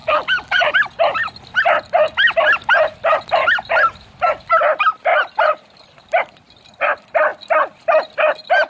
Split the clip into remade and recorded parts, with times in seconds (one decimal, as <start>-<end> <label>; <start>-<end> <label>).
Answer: 0.0-0.7 remade; 0.7-8.7 recorded